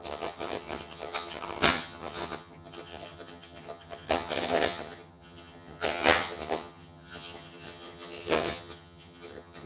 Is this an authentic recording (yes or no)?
no